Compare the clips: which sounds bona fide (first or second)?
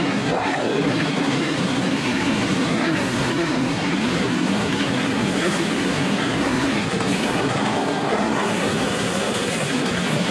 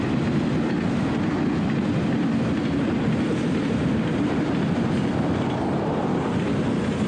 second